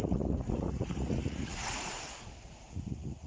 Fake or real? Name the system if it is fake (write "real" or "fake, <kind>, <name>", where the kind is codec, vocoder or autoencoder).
fake, vocoder, Vocos